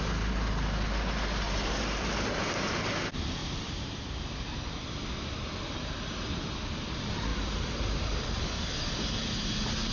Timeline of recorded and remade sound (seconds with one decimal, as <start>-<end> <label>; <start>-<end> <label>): 0.0-3.4 recorded; 3.4-4.4 remade; 4.4-7.3 recorded; 7.3-8.4 remade; 8.4-9.9 recorded

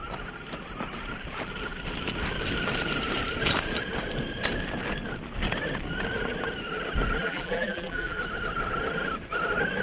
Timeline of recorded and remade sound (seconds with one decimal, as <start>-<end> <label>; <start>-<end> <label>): 0.0-7.2 recorded; 7.2-8.2 remade; 8.2-9.8 recorded

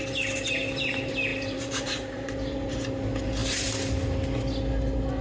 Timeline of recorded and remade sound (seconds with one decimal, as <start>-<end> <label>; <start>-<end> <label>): 0.0-1.3 recorded; 1.3-2.8 remade; 2.8-5.2 recorded

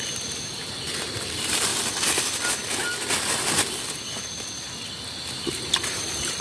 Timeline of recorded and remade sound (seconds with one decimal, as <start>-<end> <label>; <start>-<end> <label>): 0.0-1.7 remade; 1.7-5.5 recorded; 5.5-6.4 remade

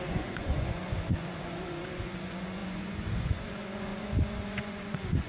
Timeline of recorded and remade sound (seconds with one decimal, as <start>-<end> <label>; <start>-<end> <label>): 0.0-5.3 remade

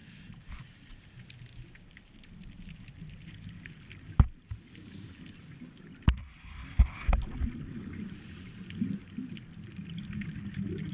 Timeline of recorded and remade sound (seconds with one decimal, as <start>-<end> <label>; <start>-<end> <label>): 0.0-10.9 recorded